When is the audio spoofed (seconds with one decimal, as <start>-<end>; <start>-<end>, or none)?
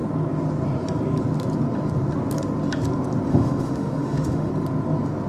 3.3-4.5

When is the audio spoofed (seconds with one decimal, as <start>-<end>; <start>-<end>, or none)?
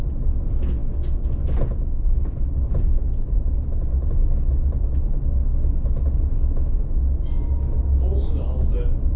none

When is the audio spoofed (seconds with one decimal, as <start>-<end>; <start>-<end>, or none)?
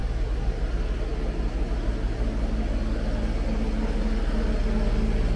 none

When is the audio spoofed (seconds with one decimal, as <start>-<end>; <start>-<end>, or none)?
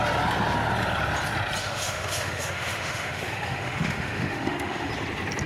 1.6-4.9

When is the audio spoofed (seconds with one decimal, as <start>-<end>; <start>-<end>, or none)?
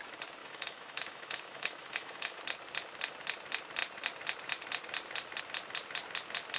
0.4-2.4